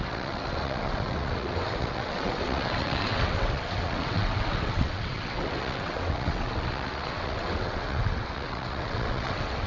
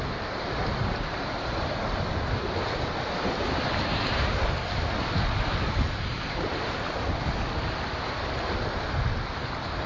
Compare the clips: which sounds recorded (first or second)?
second